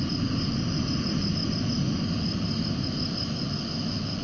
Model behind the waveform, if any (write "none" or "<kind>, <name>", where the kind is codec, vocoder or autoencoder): none